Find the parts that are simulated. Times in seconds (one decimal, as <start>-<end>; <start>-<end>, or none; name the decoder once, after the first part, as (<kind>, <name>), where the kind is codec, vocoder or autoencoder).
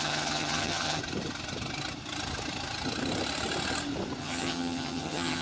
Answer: 0.0-1.0 (vocoder, HiFi-GAN); 4.2-5.4